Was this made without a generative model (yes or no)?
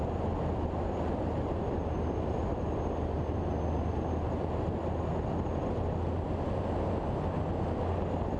yes